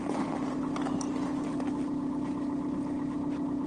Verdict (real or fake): real